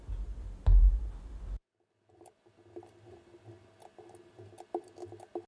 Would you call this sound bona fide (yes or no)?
yes